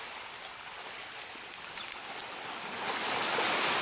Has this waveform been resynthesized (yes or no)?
no